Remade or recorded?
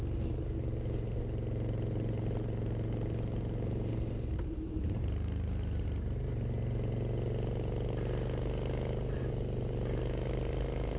recorded